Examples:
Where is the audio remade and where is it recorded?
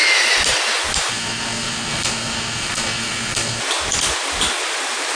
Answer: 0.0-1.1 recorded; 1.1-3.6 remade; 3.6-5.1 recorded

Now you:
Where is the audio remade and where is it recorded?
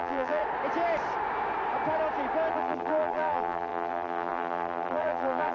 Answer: 0.0-0.4 remade; 0.4-2.5 recorded; 2.5-5.5 remade